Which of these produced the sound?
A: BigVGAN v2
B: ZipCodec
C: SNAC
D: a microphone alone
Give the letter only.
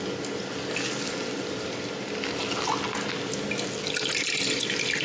D